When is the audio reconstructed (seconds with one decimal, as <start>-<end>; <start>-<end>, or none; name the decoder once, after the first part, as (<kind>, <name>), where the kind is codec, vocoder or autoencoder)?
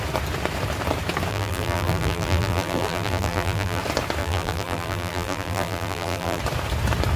1.3-3.8 (vocoder, BigVGAN v2); 4.2-6.4